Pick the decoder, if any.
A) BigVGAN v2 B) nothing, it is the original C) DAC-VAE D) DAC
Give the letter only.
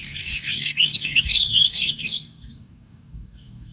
D